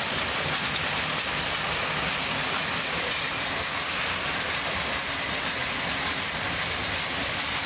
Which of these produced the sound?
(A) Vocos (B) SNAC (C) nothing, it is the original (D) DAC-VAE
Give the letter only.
C